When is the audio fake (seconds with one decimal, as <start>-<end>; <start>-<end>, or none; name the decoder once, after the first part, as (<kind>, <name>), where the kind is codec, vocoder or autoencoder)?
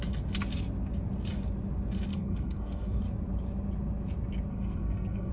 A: 2.1-3.0 (codec, SNAC); 4.5-5.3